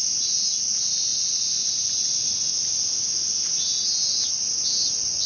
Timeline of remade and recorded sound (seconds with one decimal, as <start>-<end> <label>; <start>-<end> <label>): 0.0-5.3 recorded

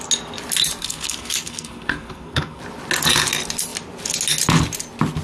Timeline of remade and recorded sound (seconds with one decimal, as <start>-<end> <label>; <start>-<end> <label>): 0.0-0.8 recorded; 0.8-2.6 remade; 2.6-5.2 recorded

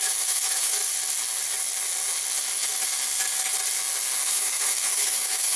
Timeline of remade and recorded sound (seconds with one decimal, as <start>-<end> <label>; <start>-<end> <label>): 0.0-0.8 remade; 0.8-4.2 recorded; 4.2-5.6 remade

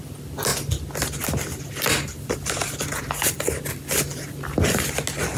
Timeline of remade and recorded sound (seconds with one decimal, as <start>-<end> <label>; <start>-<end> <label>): 0.0-5.4 recorded